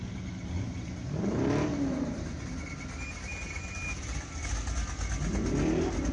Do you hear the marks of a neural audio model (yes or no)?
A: no